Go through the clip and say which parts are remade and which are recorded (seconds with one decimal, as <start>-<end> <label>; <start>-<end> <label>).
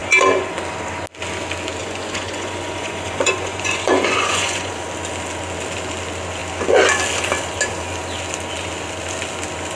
0.0-0.5 remade; 0.5-1.8 recorded; 1.8-4.7 remade; 4.7-9.8 recorded